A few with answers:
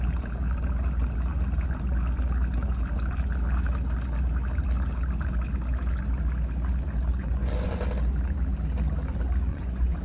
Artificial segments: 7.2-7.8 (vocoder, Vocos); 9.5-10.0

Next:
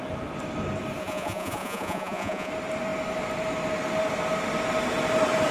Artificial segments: 1.0-2.5 (vocoder, Vocos)

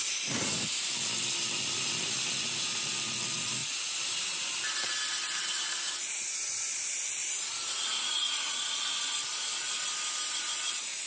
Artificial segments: 3.6-4.4 (vocoder, Vocos); 7.2-9.0

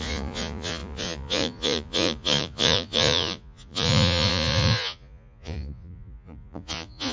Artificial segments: 0.0-7.1 (vocoder, Vocos)

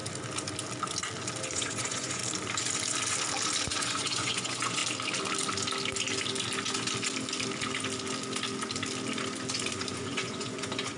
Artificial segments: 1.5-2.2 (vocoder, Vocos); 3.8-4.8; 9.7-11.0

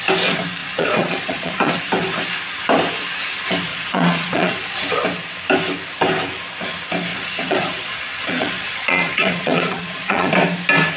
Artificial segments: 0.6-1.7 (vocoder, Vocos); 3.7-4.8; 7.1-10.3

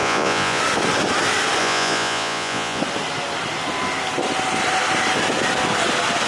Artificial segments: 0.0-0.6 (vocoder, Vocos); 1.6-2.8